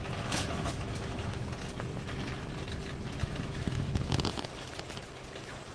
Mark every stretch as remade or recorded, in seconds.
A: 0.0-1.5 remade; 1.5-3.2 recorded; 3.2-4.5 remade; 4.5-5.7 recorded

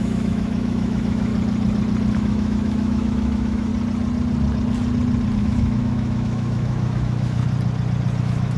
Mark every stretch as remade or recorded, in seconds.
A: 0.0-1.3 remade; 1.3-2.1 recorded; 2.1-3.7 remade; 3.7-5.4 recorded; 5.4-7.4 remade; 7.4-8.2 recorded; 8.2-8.6 remade